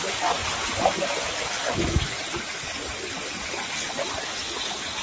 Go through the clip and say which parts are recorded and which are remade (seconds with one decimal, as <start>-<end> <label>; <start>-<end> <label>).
0.0-5.0 recorded